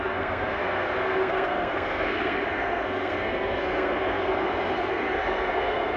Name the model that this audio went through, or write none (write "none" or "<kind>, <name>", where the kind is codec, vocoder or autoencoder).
codec, SNAC